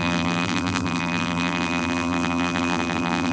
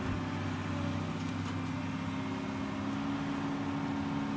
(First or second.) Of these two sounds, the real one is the second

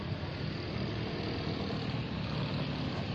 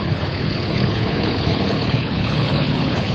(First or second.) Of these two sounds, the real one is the first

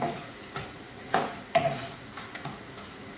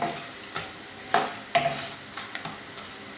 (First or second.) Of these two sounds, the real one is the second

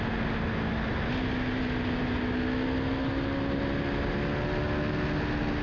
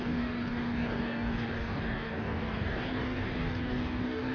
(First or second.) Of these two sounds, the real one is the first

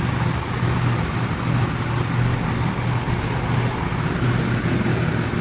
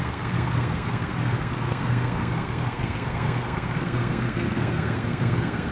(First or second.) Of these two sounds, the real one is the first